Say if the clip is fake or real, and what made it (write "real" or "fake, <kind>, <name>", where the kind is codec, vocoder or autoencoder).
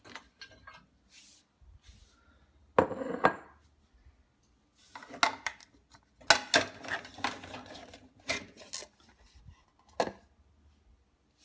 real